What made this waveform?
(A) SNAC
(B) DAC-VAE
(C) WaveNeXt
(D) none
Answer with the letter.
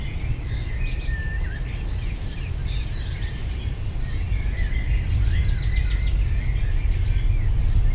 D